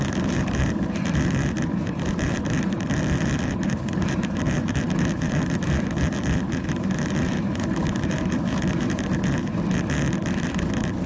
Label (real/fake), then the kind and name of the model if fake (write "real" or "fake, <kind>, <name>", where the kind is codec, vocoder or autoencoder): fake, vocoder, BigVGAN v2